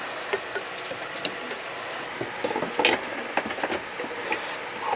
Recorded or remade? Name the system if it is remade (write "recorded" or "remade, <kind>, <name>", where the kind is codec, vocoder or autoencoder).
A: recorded